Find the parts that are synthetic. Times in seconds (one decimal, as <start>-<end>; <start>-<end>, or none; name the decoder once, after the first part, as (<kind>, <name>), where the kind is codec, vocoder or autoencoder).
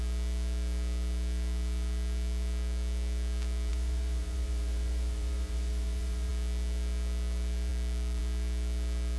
3.7-6.3 (vocoder, Vocos)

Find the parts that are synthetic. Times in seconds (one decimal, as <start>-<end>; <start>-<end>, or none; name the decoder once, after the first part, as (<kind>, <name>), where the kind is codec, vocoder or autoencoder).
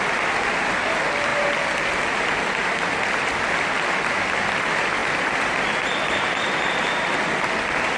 5.0-6.7 (vocoder, BigVGAN v2)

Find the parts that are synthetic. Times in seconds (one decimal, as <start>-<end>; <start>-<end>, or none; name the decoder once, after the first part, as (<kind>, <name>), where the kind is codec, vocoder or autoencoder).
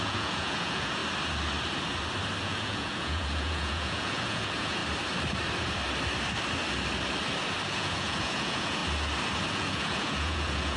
0.0-1.0 (vocoder, Vocos); 2.4-4.8; 7.7-8.8; 9.5-10.8